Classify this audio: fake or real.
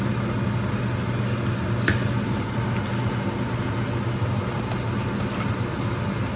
real